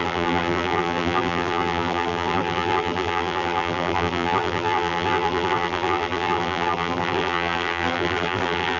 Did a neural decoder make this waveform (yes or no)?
yes